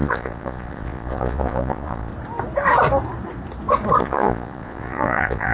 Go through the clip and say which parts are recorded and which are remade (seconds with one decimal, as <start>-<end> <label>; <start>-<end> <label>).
0.0-2.1 remade; 2.1-4.0 recorded; 4.0-5.5 remade